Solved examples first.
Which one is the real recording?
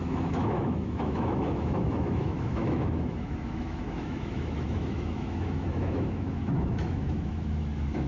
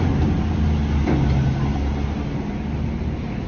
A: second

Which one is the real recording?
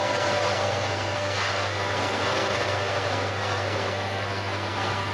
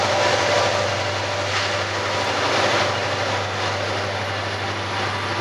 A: second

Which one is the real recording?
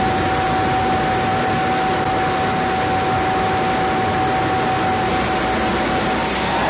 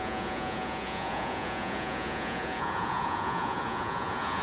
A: first